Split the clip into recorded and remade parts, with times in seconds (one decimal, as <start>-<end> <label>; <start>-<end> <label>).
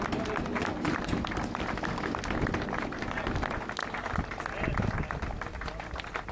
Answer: 0.0-6.3 recorded